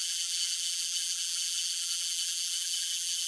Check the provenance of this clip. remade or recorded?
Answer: remade